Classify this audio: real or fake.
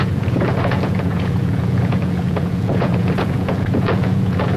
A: fake